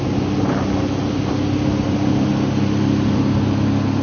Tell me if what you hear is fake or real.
real